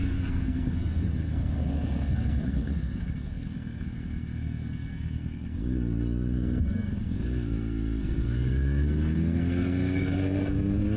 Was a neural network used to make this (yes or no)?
yes